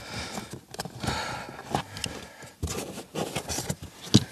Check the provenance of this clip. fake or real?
real